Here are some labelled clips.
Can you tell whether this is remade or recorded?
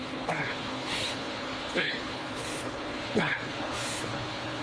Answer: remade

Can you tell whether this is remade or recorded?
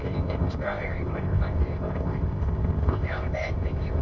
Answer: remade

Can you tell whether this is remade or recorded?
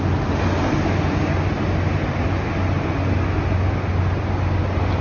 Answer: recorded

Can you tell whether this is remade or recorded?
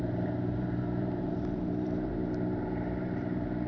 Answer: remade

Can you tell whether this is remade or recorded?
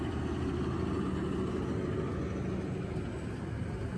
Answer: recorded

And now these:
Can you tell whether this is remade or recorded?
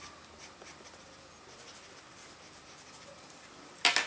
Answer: recorded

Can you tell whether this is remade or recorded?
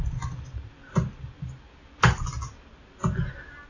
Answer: recorded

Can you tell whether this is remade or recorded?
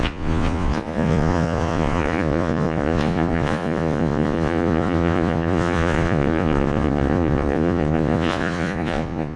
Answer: remade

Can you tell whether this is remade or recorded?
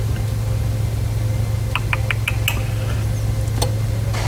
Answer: recorded